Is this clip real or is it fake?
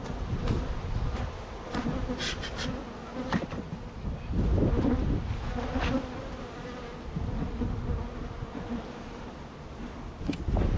real